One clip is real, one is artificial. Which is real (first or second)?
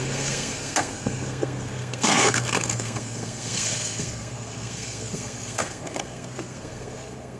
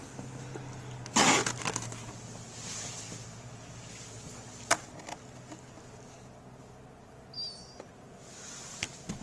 second